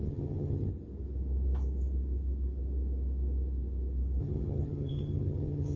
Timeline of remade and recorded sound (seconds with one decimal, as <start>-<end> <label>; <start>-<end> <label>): 0.0-0.7 remade; 0.7-4.2 recorded; 4.2-5.8 remade